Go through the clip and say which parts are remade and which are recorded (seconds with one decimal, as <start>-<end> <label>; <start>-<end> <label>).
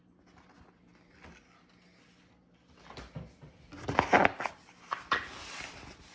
0.0-6.1 recorded